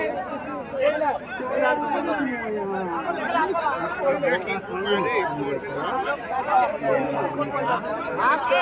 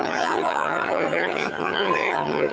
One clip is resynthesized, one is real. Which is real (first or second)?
first